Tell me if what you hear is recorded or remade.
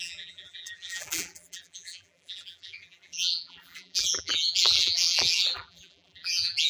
remade